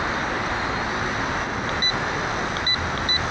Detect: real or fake real